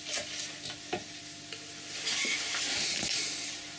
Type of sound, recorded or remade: recorded